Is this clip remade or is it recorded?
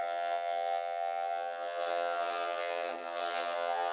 remade